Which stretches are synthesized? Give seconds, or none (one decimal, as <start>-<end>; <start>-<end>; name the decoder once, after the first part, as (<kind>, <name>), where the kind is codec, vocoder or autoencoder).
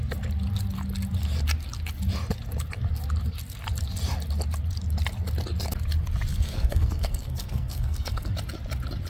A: 6.3-8.3 (codec, SNAC)